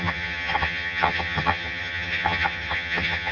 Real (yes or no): no